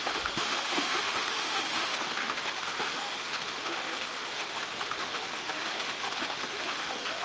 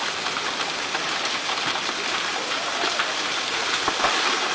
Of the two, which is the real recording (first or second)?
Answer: second